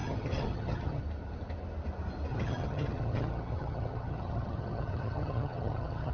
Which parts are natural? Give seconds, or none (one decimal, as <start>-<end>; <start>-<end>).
1.0-2.3